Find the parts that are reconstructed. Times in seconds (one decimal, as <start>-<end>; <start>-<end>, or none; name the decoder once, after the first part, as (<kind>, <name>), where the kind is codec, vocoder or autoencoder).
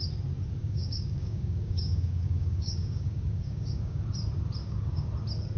0.6-4.0 (codec, DAC); 4.6-5.1